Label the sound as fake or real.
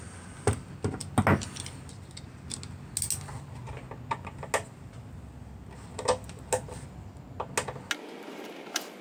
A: real